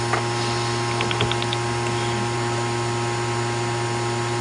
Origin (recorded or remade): recorded